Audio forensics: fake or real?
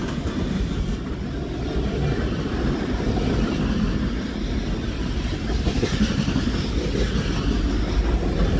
real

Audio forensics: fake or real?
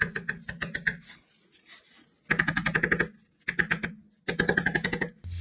real